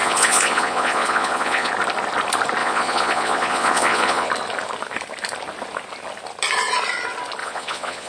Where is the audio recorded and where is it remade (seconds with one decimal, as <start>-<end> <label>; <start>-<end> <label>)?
0.0-1.7 remade; 1.7-2.6 recorded; 2.6-4.3 remade; 4.3-7.4 recorded; 7.4-8.1 remade